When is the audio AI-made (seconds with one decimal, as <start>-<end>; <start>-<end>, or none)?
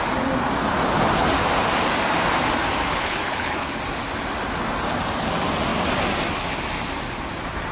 2.9-3.8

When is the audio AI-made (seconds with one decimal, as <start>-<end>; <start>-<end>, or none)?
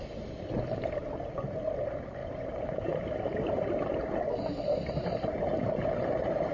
none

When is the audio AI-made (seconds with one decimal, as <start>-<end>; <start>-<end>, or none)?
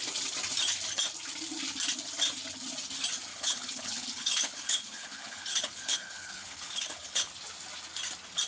3.3-7.3